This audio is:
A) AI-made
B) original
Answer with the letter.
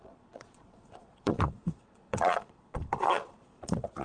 A